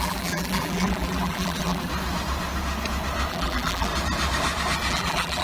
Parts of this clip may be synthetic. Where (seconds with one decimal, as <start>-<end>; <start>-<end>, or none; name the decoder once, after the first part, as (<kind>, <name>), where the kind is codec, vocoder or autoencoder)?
0.0-1.9 (vocoder, BigVGAN v2); 3.3-3.9; 4.9-5.4